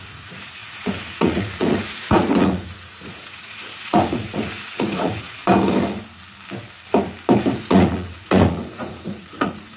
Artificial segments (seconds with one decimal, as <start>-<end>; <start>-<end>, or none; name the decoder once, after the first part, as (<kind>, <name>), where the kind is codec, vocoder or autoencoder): 0.0-5.4 (vocoder, Vocos); 7.6-9.8